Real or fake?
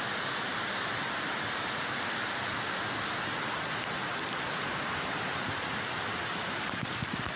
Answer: real